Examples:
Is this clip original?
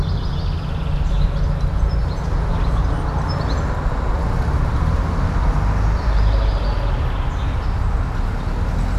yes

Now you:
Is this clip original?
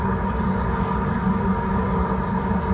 no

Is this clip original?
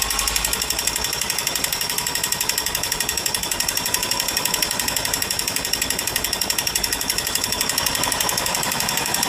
no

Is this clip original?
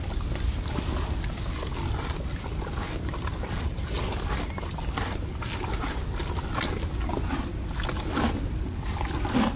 yes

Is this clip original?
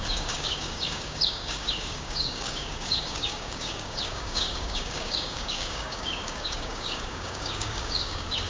no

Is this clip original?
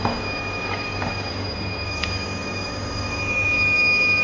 no